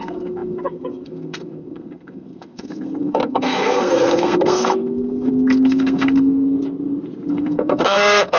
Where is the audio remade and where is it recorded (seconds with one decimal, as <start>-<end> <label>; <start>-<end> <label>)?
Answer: 0.0-6.6 remade; 6.6-7.3 recorded; 7.3-8.4 remade